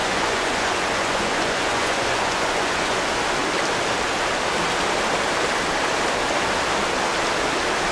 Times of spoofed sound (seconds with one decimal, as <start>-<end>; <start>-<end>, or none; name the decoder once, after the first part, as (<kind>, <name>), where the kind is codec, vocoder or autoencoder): 0.0-3.0 (vocoder, Vocos)

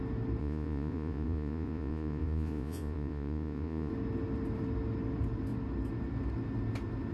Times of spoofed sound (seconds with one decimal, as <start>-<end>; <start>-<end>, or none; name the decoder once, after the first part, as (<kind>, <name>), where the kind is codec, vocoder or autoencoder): 0.4-3.9 (vocoder, Vocos)

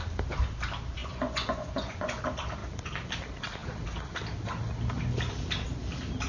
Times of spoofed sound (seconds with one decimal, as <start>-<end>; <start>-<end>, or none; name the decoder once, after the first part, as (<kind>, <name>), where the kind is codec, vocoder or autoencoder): 1.0-2.2 (vocoder, Vocos)